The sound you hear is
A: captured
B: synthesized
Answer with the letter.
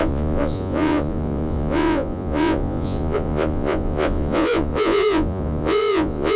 B